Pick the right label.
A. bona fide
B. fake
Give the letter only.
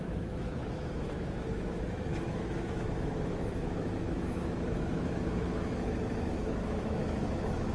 B